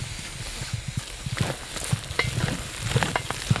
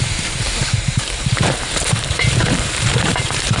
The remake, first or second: second